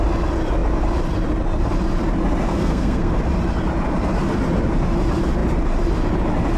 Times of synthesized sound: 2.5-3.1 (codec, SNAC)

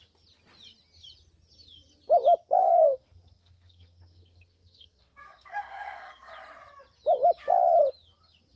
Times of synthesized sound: 2.6-6.3 (codec, SNAC)

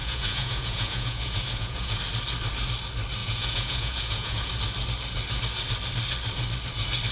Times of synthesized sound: 0.0-2.0 (vocoder, Vocos); 3.2-4.5

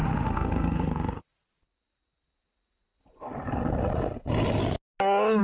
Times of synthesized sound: 0.0-1.2 (autoencoder, DAC-VAE)

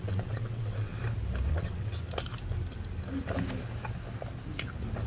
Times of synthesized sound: 0.0-0.9 (vocoder, WaveNeXt); 1.5-1.9

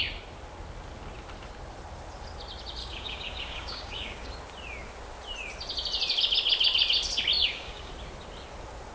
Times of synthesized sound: 2.8-4.3 (codec, DAC); 7.4-7.9

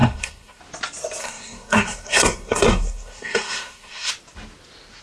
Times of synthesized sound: 0.0-0.6 (codec, SNAC); 1.2-4.1

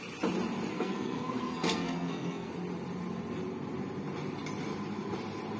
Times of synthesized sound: 0.7-2.5 (codec, SNAC)